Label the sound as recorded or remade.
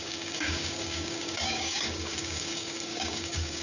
remade